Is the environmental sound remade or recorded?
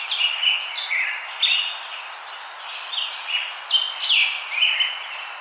recorded